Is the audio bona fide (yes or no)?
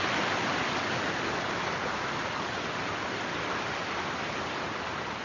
yes